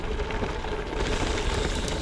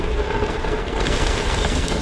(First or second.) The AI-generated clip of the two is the second